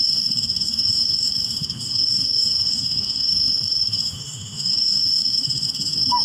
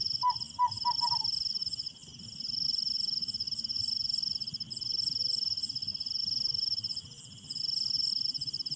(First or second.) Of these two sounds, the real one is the second